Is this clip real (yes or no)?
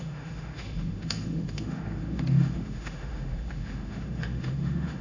no